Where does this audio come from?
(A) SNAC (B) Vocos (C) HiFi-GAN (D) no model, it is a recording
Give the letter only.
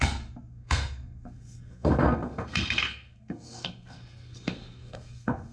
A